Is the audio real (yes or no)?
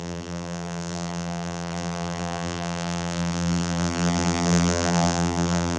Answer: no